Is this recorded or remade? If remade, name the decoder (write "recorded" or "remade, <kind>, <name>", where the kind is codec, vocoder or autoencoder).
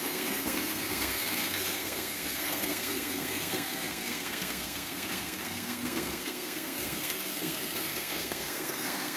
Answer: remade, codec, SNAC